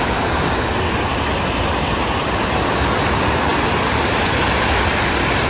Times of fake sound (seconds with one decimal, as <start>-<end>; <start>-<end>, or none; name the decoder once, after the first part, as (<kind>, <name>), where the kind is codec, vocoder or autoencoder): none